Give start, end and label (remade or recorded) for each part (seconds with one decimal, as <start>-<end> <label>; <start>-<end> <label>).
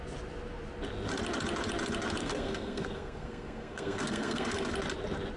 0.0-2.2 recorded; 2.2-4.7 remade; 4.7-5.4 recorded